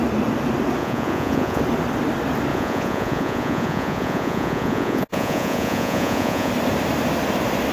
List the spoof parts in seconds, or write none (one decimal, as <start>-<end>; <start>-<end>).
0.8-1.6; 2.5-6.5

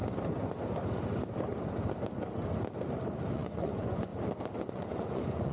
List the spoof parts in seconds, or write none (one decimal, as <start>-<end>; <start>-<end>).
3.3-4.1; 4.6-5.5